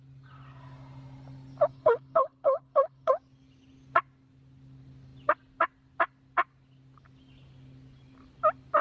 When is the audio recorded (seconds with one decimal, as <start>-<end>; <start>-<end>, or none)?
0.0-1.7; 3.1-8.8